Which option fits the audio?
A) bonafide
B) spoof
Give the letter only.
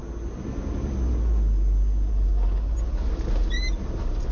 A